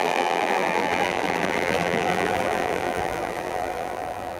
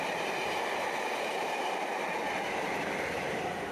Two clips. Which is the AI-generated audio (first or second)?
first